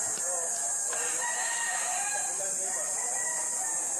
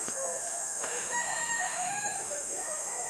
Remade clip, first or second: second